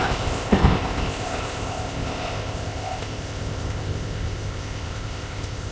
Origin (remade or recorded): remade